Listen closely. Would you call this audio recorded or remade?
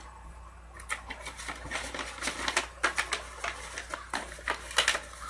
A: recorded